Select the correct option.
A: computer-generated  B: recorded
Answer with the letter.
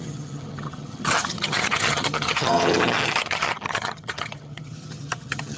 A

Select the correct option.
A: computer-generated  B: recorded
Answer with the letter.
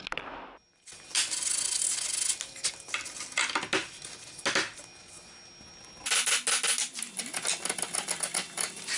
B